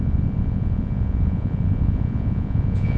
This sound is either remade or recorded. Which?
remade